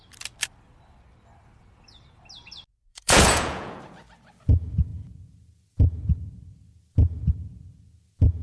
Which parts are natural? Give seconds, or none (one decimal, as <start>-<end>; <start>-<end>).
0.0-2.9; 3.8-8.4